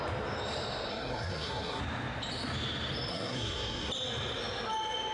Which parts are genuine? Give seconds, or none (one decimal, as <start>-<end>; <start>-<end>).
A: 0.0-0.9; 1.8-3.1; 3.9-5.1